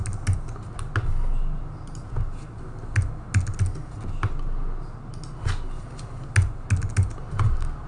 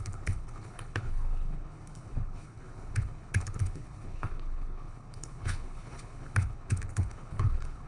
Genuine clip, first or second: first